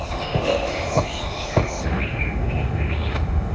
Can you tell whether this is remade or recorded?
remade